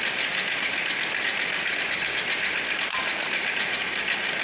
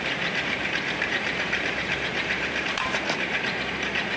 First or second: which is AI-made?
second